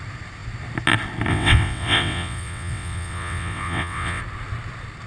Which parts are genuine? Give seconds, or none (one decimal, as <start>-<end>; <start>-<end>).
0.0-1.3; 4.2-5.1